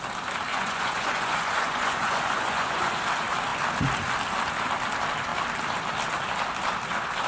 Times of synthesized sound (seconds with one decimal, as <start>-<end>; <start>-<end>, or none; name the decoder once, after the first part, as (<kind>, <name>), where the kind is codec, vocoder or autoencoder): 0.5-3.0 (vocoder, Vocos)